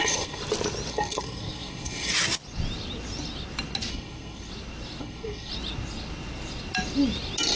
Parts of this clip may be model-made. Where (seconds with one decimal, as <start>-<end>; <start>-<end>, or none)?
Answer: 0.0-0.4; 0.9-2.1; 3.9-4.5; 5.0-5.5